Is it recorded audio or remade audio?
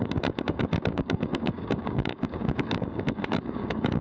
remade